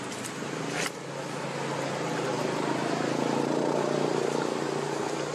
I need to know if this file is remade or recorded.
recorded